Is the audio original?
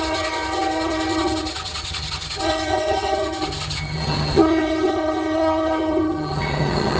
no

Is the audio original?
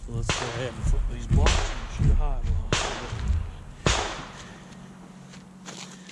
yes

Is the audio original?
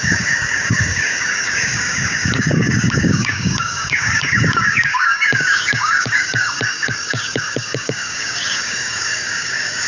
no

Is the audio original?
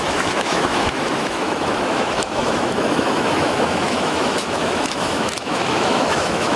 no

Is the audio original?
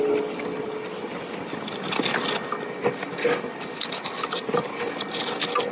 yes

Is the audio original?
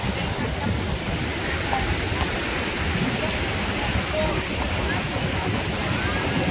yes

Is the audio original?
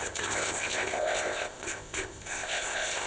no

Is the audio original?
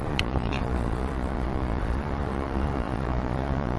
no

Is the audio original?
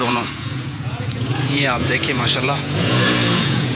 no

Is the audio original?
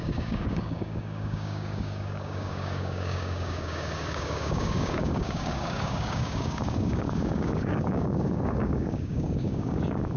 no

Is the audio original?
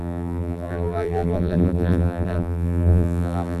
no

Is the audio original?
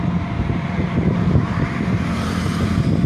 no